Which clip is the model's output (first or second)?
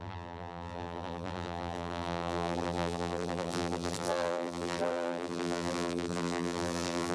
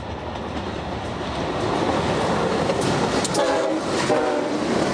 first